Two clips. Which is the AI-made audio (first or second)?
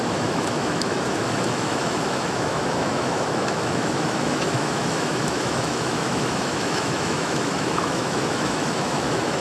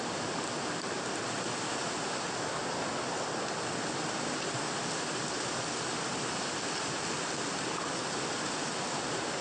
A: first